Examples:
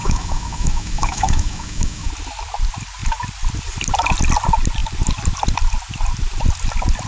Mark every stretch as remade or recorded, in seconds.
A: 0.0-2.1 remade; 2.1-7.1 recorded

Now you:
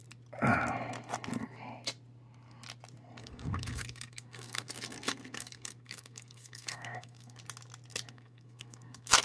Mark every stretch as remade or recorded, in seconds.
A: 0.0-3.2 recorded; 3.2-7.4 remade; 7.4-8.1 recorded; 8.1-9.2 remade